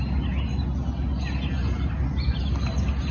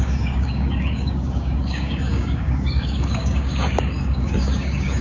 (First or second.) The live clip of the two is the first